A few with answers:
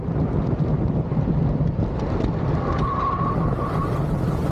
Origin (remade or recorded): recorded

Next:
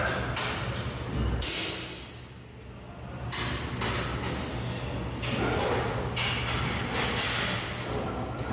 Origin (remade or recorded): recorded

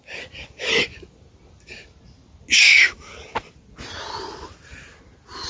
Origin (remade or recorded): recorded